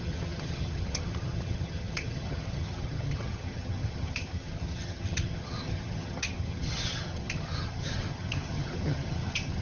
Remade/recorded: remade